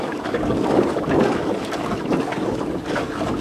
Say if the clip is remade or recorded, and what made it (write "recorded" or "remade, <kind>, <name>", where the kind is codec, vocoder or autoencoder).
remade, codec, DAC